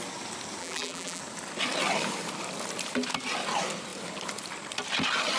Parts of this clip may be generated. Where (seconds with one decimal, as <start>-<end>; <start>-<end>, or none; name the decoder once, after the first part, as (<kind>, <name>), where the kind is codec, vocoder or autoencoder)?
0.6-1.2 (vocoder, BigVGAN v2)